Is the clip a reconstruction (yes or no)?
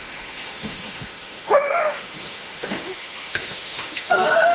yes